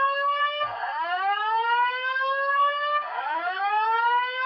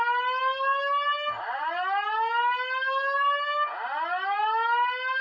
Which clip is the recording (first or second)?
second